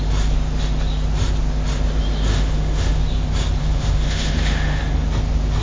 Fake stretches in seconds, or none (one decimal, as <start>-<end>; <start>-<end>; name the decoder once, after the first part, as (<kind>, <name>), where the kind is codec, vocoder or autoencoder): 2.3-3.0 (autoencoder, DAC-VAE); 3.6-4.8